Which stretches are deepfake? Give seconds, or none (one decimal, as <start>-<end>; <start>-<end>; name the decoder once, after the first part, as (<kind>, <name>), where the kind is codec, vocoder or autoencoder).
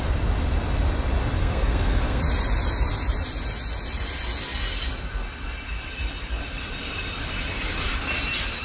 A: 1.4-2.2 (codec, SNAC)